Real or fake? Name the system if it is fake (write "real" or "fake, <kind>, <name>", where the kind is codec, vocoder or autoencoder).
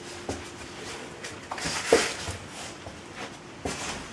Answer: real